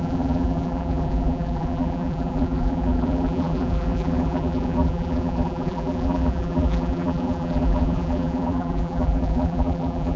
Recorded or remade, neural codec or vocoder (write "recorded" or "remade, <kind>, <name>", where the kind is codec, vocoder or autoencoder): remade, vocoder, BigVGAN v2